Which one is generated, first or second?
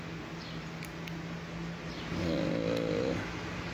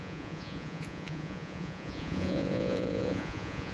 second